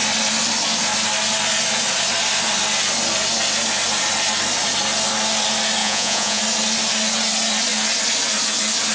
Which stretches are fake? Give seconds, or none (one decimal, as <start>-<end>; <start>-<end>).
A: 5.8-6.4